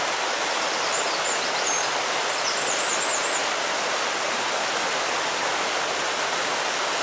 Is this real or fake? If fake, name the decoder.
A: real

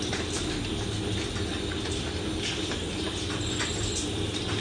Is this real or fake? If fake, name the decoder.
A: real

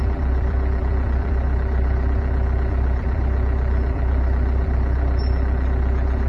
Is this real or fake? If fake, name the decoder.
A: fake, vocoder, BigVGAN v2